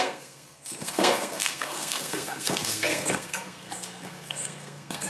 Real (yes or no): no